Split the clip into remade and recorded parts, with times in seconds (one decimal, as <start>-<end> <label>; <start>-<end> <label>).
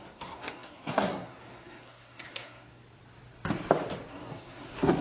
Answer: 0.0-2.8 remade; 2.8-4.1 recorded; 4.1-5.0 remade